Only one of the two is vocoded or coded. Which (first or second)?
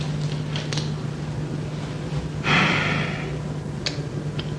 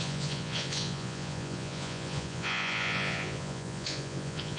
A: second